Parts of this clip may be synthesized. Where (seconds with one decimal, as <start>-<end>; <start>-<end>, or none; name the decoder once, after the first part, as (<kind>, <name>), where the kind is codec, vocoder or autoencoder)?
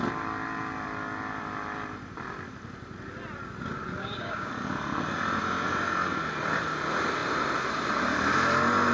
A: 4.0-4.5 (codec, DAC)